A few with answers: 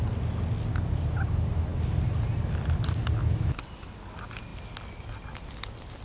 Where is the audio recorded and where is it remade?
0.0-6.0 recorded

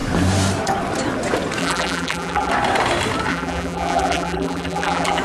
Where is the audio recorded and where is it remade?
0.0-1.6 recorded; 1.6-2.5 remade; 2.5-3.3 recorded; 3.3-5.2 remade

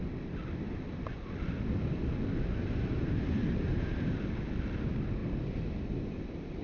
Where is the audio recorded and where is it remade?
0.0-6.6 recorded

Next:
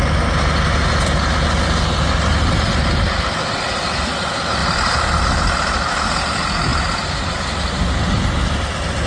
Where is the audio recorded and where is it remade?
0.0-6.7 recorded; 6.7-7.9 remade; 7.9-9.1 recorded

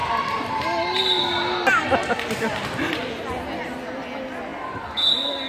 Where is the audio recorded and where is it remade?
0.0-3.3 remade; 3.3-4.5 recorded; 4.5-5.5 remade